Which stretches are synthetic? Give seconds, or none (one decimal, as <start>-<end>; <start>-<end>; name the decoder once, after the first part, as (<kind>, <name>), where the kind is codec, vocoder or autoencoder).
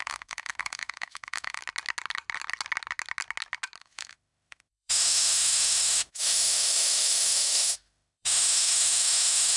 0.0-1.6 (autoencoder, DAC-VAE); 3.8-9.6